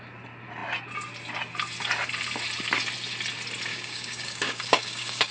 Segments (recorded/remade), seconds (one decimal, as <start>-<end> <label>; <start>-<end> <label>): 0.0-3.7 recorded; 3.7-5.3 remade